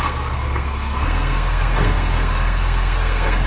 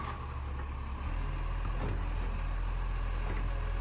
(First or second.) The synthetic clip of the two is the first